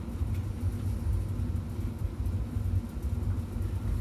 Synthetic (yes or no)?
no